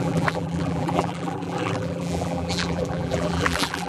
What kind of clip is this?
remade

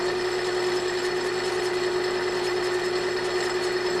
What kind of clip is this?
recorded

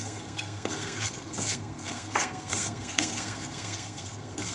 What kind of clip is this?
remade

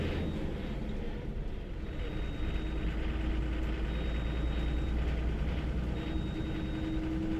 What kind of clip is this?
recorded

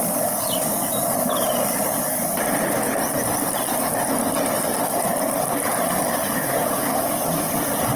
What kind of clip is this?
recorded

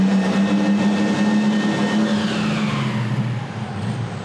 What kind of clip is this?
recorded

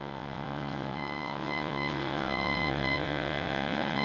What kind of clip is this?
remade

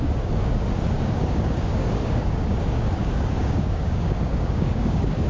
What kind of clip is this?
remade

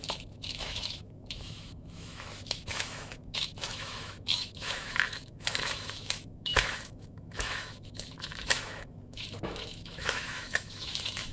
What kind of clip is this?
remade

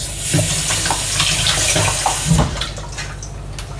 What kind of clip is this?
recorded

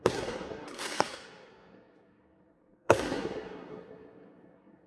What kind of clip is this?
remade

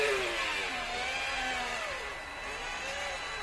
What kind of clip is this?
recorded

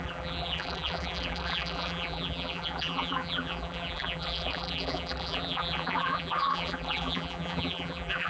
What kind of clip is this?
remade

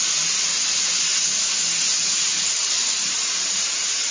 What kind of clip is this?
recorded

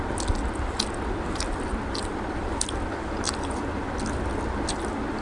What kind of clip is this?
recorded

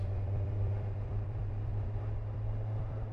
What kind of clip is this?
remade